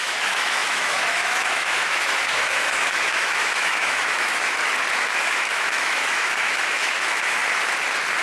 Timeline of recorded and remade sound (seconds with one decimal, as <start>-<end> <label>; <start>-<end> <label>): 0.0-4.6 remade; 4.6-5.2 recorded; 5.2-7.4 remade; 7.4-8.2 recorded